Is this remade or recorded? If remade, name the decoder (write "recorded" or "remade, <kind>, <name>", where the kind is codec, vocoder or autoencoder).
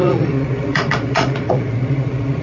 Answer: remade, vocoder, Vocos